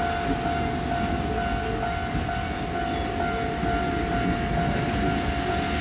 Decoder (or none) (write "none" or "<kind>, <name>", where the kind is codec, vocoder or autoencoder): none